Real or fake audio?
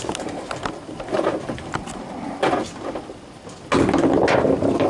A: real